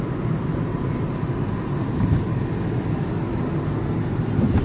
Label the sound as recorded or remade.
recorded